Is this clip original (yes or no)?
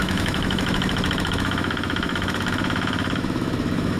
no